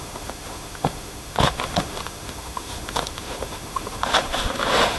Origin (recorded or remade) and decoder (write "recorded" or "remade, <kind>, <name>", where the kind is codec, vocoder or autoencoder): remade, autoencoder, DAC-VAE